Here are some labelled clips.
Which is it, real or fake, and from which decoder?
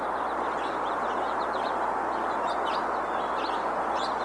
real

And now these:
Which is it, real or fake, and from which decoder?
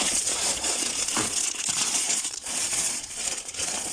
fake, vocoder, Vocos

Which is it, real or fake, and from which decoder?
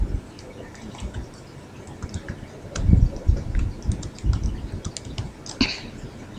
real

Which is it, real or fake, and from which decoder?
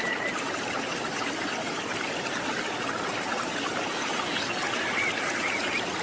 real